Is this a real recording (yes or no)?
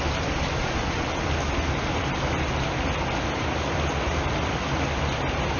yes